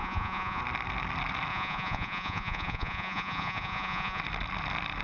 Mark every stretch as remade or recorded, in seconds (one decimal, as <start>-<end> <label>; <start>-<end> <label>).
0.0-0.6 remade; 0.6-1.5 recorded; 1.5-4.2 remade; 4.2-5.0 recorded